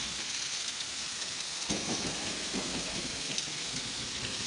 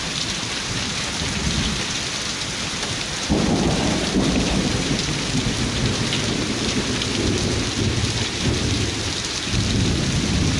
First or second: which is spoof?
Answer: first